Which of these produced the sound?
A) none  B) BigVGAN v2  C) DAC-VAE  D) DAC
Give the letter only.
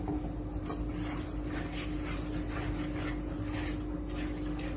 A